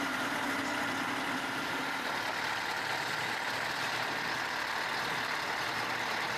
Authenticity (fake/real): real